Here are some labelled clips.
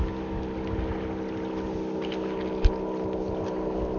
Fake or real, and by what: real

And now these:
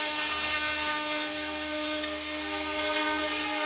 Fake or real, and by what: fake, codec, SNAC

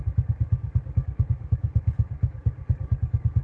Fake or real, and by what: fake, codec, DAC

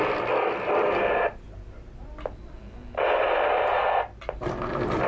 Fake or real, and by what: real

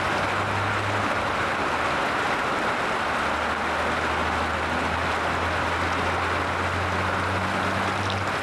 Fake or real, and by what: real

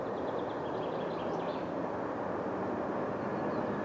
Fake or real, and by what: real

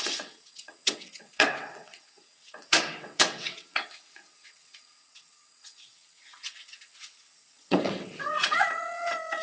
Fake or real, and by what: fake, vocoder, WaveNeXt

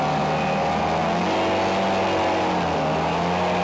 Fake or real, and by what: real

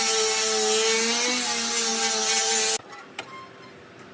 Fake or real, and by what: real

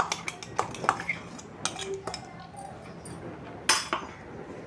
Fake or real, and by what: real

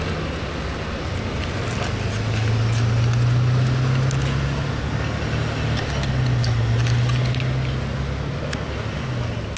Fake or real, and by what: real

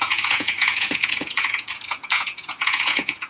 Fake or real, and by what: fake, vocoder, Vocos